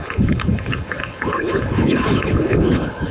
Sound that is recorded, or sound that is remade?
remade